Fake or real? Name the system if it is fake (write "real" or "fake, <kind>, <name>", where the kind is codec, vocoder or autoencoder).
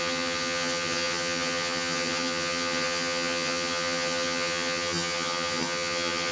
fake, vocoder, HiFi-GAN